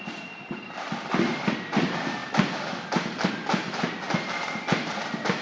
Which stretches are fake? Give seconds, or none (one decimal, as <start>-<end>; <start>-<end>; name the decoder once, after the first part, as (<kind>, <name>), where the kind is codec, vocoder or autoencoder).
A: none